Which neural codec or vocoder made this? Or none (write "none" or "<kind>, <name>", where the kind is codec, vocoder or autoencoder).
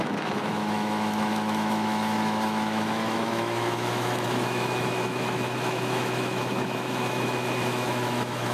autoencoder, DAC-VAE